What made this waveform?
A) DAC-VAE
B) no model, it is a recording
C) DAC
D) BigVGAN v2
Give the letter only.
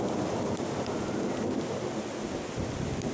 B